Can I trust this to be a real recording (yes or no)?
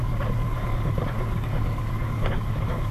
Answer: no